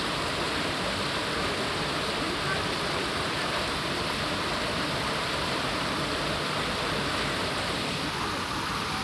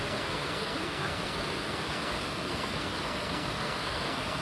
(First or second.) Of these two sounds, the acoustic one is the first